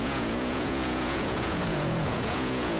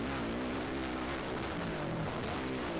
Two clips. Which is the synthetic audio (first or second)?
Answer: first